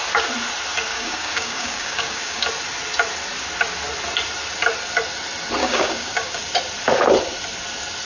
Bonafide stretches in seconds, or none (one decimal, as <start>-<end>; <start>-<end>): 0.0-0.9; 2.4-5.6; 6.4-8.0